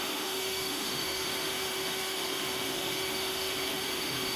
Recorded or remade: remade